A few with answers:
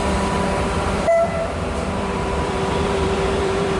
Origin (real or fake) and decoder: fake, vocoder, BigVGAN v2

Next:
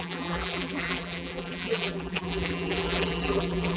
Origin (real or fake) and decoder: fake, vocoder, BigVGAN v2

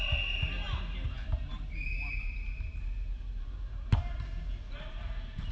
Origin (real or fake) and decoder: fake, vocoder, BigVGAN v2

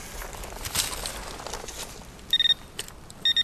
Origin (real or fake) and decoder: real